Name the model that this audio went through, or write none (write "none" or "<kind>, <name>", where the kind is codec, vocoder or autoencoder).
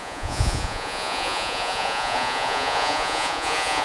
vocoder, Vocos